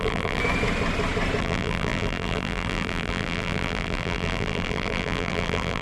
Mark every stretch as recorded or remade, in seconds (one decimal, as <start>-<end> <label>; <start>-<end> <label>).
0.0-0.4 remade; 0.4-1.4 recorded; 1.4-5.8 remade